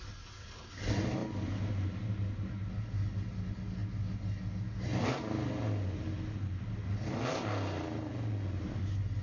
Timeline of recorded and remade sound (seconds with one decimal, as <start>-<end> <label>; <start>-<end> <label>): 0.0-9.2 recorded